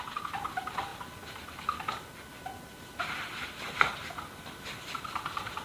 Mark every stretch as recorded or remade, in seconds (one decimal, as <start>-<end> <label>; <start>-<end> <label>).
0.0-5.6 recorded